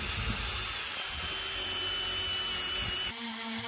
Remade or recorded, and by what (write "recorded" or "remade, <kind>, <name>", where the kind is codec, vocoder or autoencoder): recorded